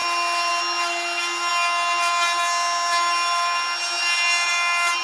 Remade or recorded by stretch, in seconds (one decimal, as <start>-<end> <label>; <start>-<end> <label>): 0.0-5.0 recorded